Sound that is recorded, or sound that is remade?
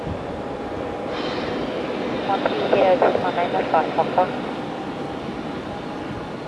recorded